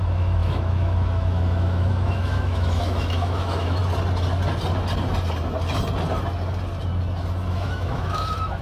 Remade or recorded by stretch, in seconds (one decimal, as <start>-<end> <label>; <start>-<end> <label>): 0.0-3.8 remade; 3.8-7.5 recorded; 7.5-8.6 remade